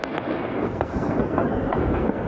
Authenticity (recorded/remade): remade